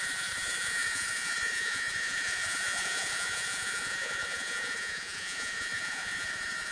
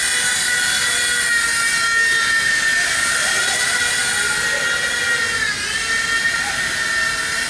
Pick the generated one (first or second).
first